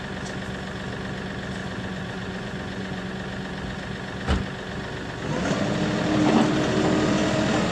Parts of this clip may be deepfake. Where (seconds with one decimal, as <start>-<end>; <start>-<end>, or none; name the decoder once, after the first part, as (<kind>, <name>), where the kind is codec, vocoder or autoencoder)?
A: 1.6-3.1 (vocoder, Vocos)